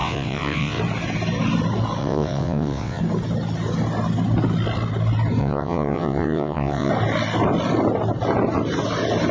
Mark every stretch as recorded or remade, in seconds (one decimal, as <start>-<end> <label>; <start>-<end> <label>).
0.0-0.8 remade; 0.8-2.0 recorded; 2.0-3.0 remade; 3.0-5.4 recorded; 5.4-6.9 remade; 6.9-9.3 recorded